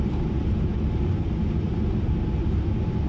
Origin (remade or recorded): recorded